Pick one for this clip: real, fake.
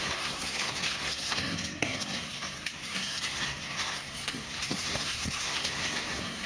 fake